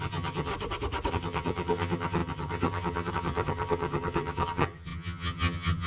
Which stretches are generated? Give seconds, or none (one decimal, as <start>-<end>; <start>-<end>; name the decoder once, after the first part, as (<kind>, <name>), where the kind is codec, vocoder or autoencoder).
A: 0.0-0.5 (vocoder, HiFi-GAN); 1.1-5.9

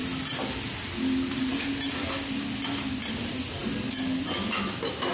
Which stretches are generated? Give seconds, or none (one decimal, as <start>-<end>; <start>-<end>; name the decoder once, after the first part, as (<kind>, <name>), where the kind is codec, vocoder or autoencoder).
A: none

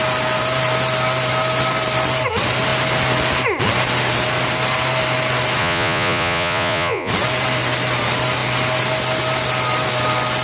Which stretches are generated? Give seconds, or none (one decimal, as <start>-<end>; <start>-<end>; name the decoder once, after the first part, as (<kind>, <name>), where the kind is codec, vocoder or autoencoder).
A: 5.6-7.1 (vocoder, Vocos)

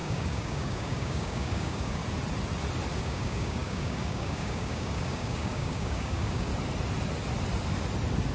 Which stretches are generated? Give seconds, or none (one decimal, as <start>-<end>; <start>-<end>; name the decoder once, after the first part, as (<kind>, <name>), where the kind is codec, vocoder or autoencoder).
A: 0.0-2.0 (codec, DAC); 3.0-6.5

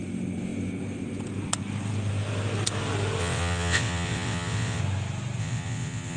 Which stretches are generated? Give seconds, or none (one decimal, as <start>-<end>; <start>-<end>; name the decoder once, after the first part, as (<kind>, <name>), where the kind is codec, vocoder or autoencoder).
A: 3.2-4.8 (vocoder, WaveNeXt); 5.4-6.2

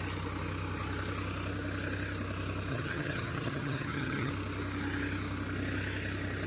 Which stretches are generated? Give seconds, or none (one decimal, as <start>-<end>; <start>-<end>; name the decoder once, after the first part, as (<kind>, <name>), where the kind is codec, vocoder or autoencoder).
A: 2.7-4.3 (vocoder, HiFi-GAN)